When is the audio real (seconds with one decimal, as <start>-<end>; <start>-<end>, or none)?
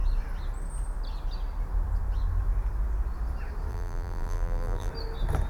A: 0.0-3.7; 4.9-5.5